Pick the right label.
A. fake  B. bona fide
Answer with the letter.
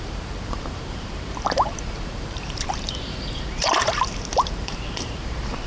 A